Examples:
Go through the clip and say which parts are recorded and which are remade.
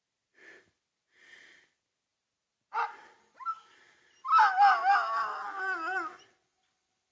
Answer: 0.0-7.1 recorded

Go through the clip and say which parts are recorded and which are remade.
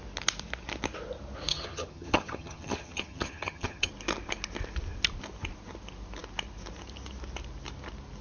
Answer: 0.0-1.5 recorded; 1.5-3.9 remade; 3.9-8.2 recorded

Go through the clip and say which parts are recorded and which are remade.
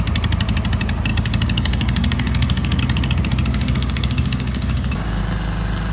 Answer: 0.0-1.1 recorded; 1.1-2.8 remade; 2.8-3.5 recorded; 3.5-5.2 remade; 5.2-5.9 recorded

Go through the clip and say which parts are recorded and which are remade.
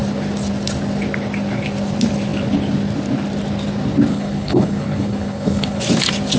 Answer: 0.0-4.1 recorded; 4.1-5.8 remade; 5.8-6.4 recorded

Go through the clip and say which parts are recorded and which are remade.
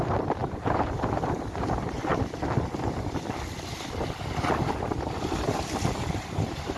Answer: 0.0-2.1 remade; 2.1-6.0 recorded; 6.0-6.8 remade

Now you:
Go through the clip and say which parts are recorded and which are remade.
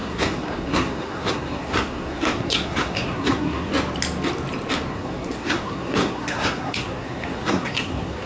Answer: 0.0-3.7 remade; 3.7-4.9 recorded; 4.9-8.3 remade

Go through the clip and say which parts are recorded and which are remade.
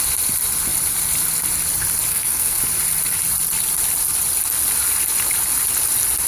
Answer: 0.0-2.1 recorded; 2.1-2.6 remade; 2.6-6.3 recorded